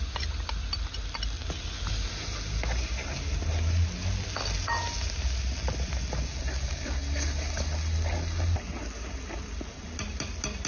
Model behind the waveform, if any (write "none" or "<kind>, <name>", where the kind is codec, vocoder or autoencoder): none